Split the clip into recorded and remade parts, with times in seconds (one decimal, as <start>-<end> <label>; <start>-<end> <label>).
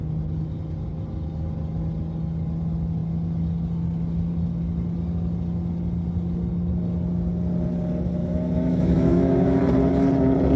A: 0.0-8.2 recorded; 8.2-9.6 remade; 9.6-10.6 recorded